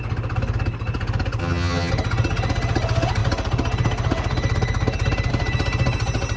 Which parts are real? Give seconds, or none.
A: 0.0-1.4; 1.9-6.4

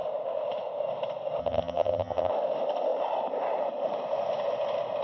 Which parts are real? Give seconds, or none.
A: 0.0-1.4; 2.3-5.0

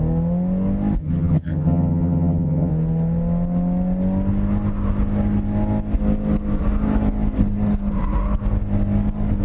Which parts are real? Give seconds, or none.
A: 0.0-1.0; 2.7-9.4

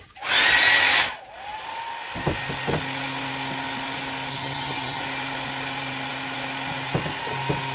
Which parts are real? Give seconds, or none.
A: 0.0-4.3; 5.0-7.7

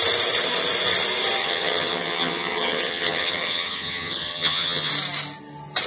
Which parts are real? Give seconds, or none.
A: 0.0-1.4; 4.9-5.9

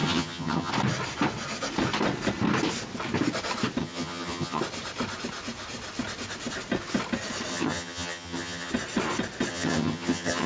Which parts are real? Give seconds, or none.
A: 0.7-3.8; 4.6-7.5; 8.7-9.5

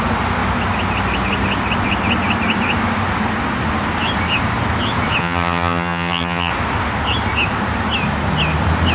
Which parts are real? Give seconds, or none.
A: 0.0-5.2; 6.5-8.9